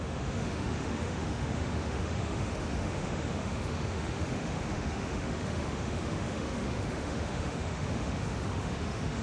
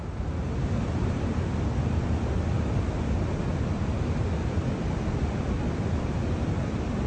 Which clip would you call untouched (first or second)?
second